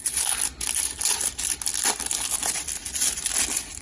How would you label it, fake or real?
real